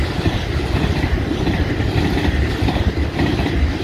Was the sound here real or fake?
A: real